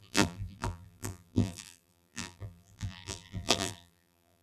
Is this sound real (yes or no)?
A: no